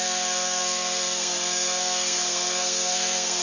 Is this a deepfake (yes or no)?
yes